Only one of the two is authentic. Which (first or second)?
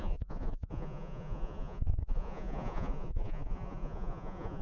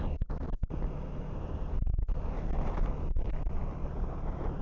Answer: second